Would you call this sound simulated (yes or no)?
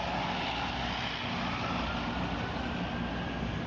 no